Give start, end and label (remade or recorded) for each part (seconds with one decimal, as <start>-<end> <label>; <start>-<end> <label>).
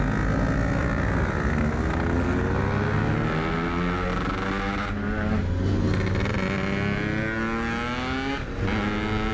0.0-0.8 recorded; 0.8-1.6 remade; 1.6-9.3 recorded